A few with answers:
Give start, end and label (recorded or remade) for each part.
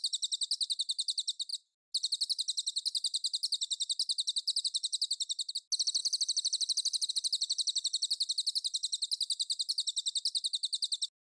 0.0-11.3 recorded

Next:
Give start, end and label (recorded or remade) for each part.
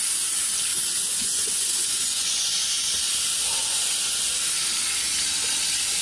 0.0-0.7 recorded; 0.7-2.9 remade; 2.9-3.5 recorded; 3.5-4.3 remade; 4.3-6.0 recorded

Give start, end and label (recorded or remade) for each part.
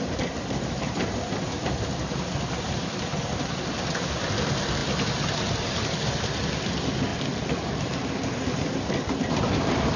0.0-10.0 recorded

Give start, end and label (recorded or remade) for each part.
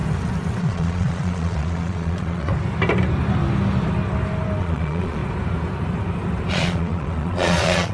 0.0-0.6 recorded; 0.6-2.5 remade; 2.5-4.6 recorded; 4.6-5.2 remade; 5.2-6.5 recorded; 6.5-7.9 remade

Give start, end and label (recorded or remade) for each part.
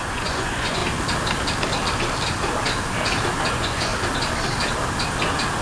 0.0-0.8 remade; 0.8-3.5 recorded; 3.5-3.9 remade; 3.9-5.6 recorded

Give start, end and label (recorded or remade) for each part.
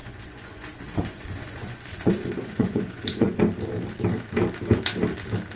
0.0-3.4 remade; 3.4-5.6 recorded